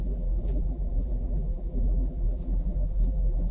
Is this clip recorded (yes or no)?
no